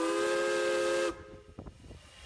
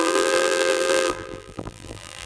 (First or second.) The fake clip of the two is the second